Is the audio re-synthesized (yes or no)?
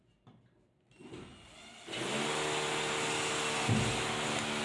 no